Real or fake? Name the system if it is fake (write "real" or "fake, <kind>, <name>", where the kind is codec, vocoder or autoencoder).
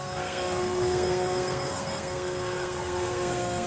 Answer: fake, codec, SNAC